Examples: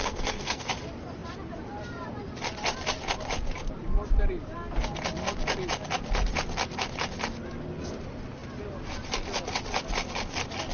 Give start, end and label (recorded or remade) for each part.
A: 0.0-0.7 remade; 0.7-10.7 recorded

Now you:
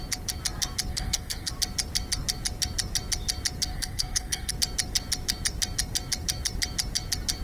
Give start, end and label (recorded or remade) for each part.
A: 0.0-0.9 recorded; 0.9-1.5 remade; 1.5-3.7 recorded; 3.7-4.5 remade; 4.5-7.4 recorded

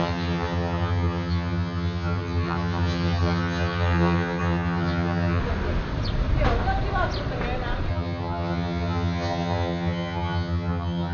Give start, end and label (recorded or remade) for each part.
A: 0.0-5.4 remade; 5.4-7.9 recorded; 7.9-11.1 remade

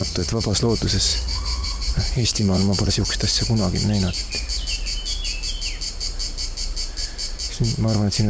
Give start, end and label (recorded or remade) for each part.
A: 0.0-0.6 remade; 0.6-1.1 recorded; 1.1-2.9 remade; 2.9-8.3 recorded

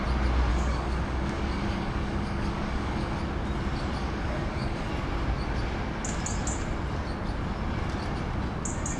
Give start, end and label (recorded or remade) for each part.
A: 0.0-0.5 recorded; 0.5-3.2 remade; 3.2-4.0 recorded; 4.0-4.9 remade; 4.9-9.0 recorded

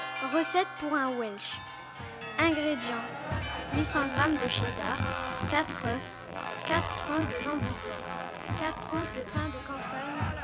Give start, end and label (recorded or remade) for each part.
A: 0.0-4.1 recorded; 4.1-9.3 remade; 9.3-10.4 recorded

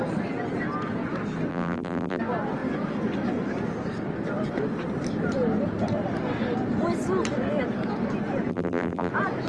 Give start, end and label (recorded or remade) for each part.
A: 0.0-1.5 recorded; 1.5-2.2 remade; 2.2-8.5 recorded; 8.5-9.1 remade; 9.1-9.5 recorded

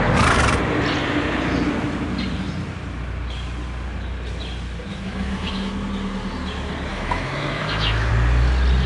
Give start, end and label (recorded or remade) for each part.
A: 0.0-4.9 recorded; 4.9-5.7 remade; 5.7-6.9 recorded; 6.9-8.1 remade; 8.1-8.9 recorded